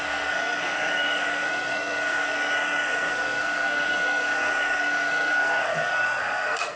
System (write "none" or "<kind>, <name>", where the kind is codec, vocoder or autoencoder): codec, SNAC